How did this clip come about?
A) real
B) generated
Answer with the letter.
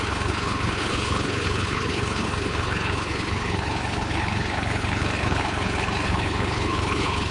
B